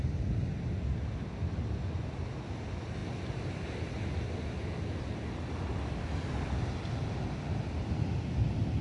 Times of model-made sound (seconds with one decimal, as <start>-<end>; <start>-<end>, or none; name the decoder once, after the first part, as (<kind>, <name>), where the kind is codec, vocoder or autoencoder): none